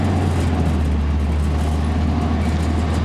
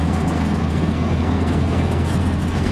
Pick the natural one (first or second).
first